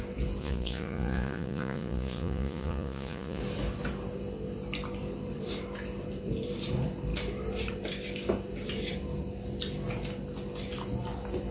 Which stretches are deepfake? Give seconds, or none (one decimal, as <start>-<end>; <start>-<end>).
0.4-3.4